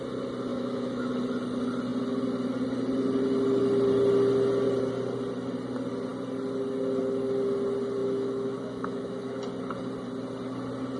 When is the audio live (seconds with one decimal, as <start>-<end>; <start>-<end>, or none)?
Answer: 0.0-0.5; 1.1-8.0; 9.4-11.0